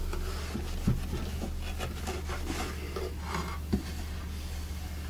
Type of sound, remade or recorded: recorded